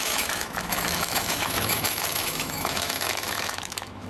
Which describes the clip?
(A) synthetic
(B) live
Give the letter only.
A